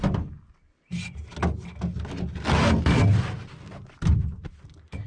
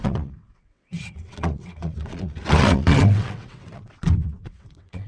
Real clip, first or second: first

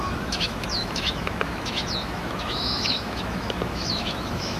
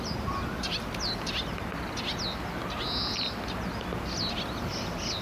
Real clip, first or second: second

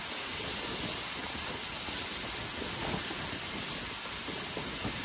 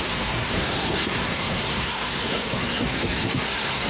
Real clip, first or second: first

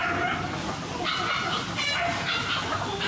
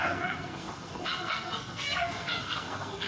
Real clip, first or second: first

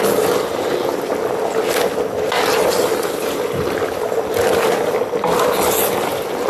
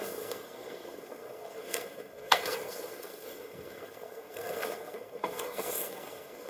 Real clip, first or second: first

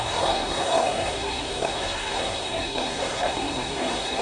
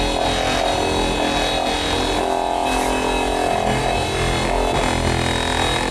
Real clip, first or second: second